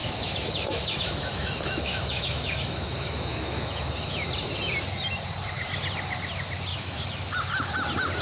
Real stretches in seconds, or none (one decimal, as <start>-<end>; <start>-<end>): 4.3-6.7; 7.3-8.2